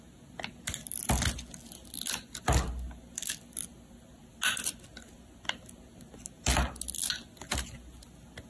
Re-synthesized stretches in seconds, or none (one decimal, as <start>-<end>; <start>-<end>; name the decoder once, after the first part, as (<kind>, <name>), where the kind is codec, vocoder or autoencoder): none